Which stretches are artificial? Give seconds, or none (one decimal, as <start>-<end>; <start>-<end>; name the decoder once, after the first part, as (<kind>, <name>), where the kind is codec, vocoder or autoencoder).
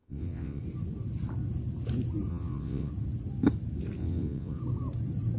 0.0-0.6 (vocoder, WaveNeXt); 2.3-2.9; 4.0-4.6